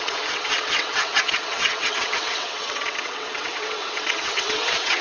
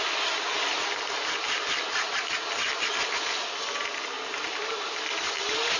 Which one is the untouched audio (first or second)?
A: second